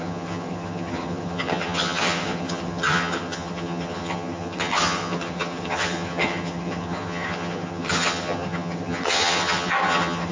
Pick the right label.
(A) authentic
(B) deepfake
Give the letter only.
B